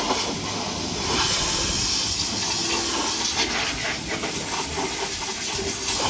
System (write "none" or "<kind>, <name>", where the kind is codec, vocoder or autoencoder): none